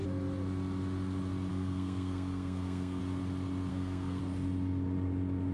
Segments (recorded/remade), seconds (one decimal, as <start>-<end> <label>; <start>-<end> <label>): 0.0-1.5 recorded; 1.5-3.0 remade; 3.0-3.7 recorded; 3.7-4.2 remade; 4.2-5.5 recorded